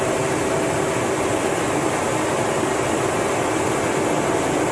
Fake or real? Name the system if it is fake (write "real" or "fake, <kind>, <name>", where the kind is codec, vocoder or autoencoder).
real